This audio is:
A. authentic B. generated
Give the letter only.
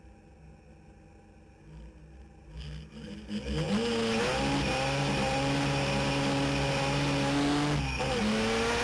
A